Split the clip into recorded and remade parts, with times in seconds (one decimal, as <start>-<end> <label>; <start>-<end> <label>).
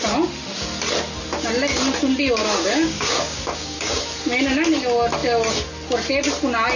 0.0-2.4 recorded; 2.4-4.0 remade; 4.0-6.8 recorded